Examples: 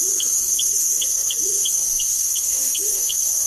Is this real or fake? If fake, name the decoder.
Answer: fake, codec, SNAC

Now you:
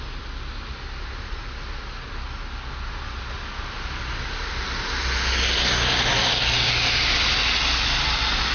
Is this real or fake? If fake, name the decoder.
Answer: real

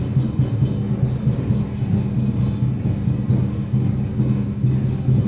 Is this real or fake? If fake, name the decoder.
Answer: real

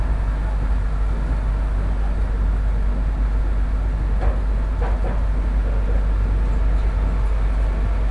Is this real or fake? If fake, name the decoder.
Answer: real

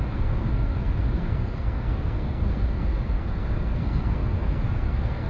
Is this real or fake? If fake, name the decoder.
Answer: fake, codec, SNAC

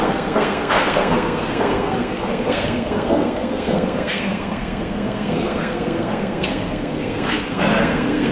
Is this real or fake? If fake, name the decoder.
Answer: fake, codec, SNAC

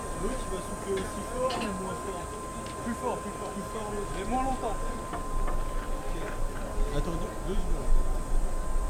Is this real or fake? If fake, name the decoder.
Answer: real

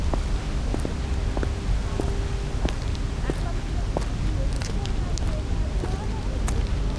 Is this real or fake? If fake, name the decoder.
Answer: real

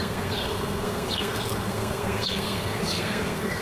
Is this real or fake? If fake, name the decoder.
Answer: fake, codec, SNAC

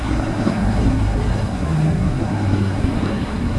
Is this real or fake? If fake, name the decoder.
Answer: fake, codec, SNAC